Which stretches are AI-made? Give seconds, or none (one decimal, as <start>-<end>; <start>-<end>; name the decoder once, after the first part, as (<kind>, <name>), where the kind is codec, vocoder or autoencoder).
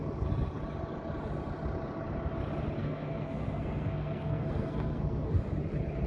2.8-5.3 (codec, SNAC)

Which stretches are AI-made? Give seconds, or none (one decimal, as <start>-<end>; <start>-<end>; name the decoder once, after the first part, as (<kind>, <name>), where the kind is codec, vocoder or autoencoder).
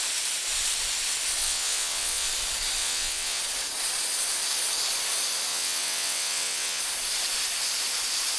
1.4-2.3 (vocoder, WaveNeXt); 2.8-3.4; 5.5-6.8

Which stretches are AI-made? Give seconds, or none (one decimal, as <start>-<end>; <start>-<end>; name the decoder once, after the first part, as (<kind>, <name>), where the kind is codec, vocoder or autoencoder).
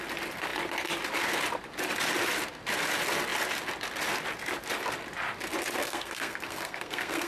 5.8-7.3 (codec, SNAC)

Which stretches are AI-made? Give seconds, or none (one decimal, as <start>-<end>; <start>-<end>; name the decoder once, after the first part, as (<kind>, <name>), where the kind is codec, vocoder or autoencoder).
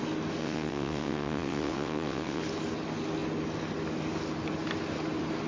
0.4-2.4 (vocoder, WaveNeXt)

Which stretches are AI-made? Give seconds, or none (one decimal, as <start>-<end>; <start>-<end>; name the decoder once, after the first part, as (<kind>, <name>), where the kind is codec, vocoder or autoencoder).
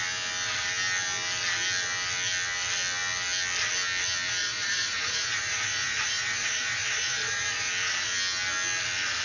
4.4-7.7 (vocoder, Vocos)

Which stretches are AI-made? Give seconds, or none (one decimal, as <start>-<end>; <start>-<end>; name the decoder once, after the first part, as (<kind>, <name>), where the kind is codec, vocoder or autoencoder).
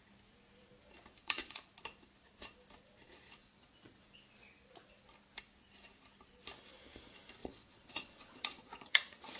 1.2-1.7 (vocoder, Vocos); 3.4-4.1; 7.4-9.4